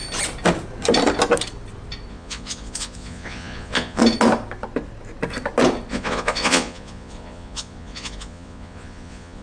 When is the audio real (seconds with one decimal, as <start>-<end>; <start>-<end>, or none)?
0.0-2.1; 4.0-5.9